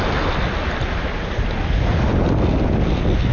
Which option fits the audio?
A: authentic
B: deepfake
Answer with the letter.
A